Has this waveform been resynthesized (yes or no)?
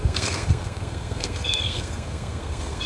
yes